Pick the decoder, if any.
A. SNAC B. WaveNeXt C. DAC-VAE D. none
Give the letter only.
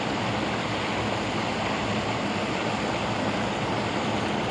D